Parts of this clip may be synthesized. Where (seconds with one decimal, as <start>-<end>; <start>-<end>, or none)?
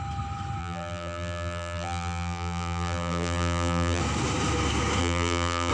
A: 0.6-4.0; 5.0-5.7